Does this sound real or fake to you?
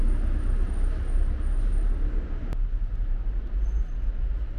real